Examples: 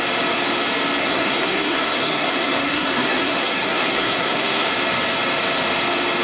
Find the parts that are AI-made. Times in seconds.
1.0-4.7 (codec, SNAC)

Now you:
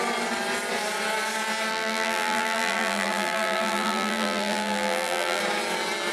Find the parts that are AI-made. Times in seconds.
1.7-5.4 (vocoder, BigVGAN v2)

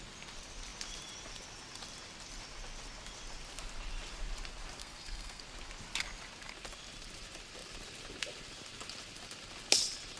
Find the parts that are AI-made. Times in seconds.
4.8-5.4 (codec, SNAC)